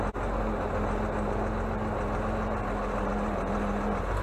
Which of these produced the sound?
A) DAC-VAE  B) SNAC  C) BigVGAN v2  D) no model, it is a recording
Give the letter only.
D